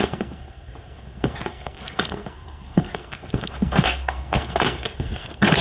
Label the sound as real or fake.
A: fake